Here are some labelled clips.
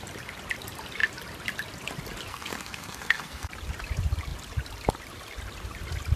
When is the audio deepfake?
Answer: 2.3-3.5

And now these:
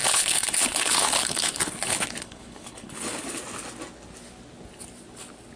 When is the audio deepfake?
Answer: 0.0-3.4

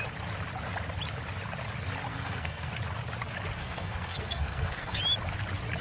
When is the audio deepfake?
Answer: 2.1-2.7; 3.6-5.0

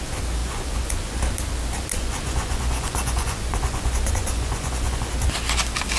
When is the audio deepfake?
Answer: 0.4-1.2; 1.9-5.1